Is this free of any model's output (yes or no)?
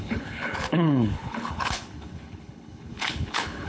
no